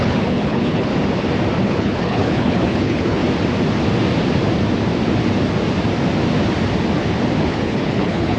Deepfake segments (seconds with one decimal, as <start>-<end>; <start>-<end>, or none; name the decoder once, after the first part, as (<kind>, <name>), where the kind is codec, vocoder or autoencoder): 0.0-0.9 (codec, HILCodec); 1.6-3.2; 7.4-8.4

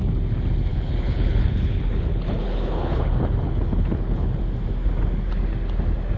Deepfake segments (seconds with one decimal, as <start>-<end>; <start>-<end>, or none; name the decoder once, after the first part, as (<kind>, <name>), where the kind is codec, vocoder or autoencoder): 0.7-4.4 (codec, HILCodec)

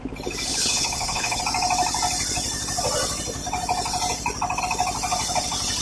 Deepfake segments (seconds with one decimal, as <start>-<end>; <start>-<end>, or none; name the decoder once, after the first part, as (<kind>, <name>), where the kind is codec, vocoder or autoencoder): 0.5-1.4 (codec, HILCodec)